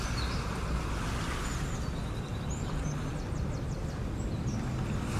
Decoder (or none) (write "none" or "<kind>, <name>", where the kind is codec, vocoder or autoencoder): none